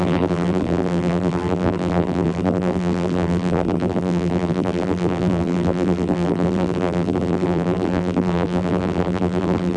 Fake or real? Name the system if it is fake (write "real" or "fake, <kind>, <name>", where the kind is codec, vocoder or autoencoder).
fake, vocoder, BigVGAN v2